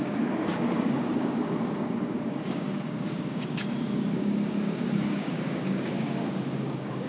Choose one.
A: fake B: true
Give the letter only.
A